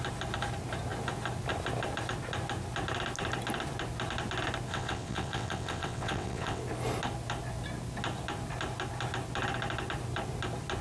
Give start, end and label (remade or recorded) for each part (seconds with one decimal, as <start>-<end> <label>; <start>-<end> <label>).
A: 0.0-4.7 recorded; 4.7-6.6 remade; 6.6-10.8 recorded